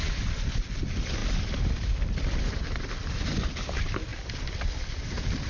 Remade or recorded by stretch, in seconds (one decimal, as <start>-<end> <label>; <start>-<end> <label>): 0.0-1.2 recorded; 1.2-2.5 remade; 2.5-4.1 recorded; 4.1-5.5 remade